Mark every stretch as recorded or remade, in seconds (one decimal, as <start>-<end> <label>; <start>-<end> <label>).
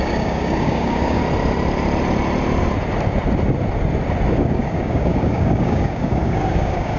0.0-1.2 remade; 1.2-4.3 recorded; 4.3-7.0 remade